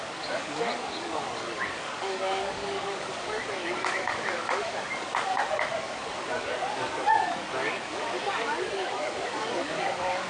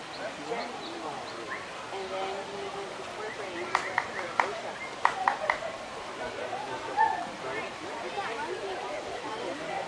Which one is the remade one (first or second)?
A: first